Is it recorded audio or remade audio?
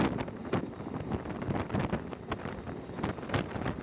recorded